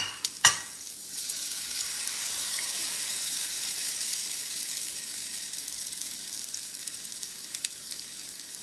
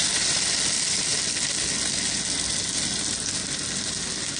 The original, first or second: second